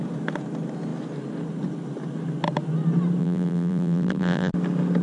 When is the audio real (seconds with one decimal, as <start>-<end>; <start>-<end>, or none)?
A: 0.0-3.2; 4.5-5.0